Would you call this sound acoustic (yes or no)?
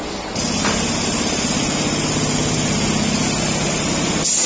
yes